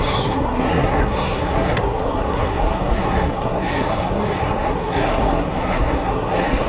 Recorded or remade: remade